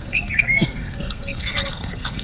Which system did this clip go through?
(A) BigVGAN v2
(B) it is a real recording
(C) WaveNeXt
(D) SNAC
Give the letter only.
D